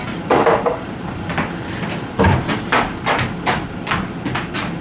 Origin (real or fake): real